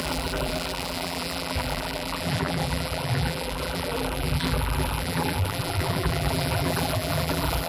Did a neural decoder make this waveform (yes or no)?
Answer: yes